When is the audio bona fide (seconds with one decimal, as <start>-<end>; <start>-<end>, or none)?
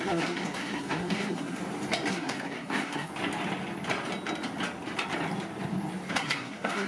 1.6-2.1; 3.1-6.1